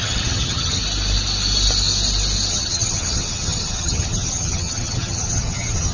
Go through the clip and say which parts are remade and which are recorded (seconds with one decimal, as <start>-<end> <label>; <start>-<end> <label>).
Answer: 0.0-0.8 remade; 0.8-2.5 recorded; 2.5-5.9 remade